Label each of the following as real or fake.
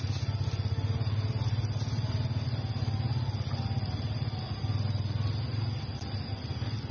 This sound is real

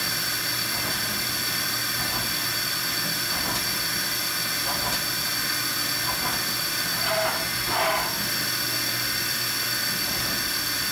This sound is real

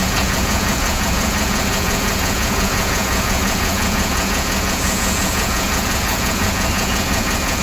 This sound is fake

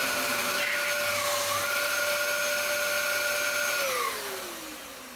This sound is real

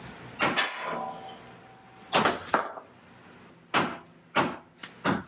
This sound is real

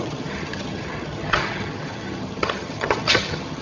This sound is fake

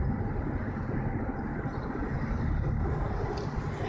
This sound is real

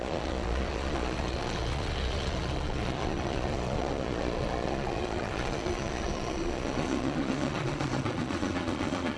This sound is fake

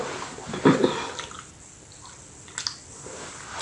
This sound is real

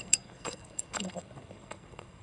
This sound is fake